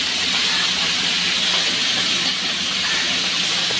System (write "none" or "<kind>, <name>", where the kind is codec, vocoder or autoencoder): none